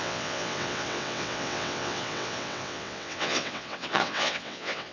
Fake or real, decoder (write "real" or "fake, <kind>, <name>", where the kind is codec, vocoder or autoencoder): fake, vocoder, WaveNeXt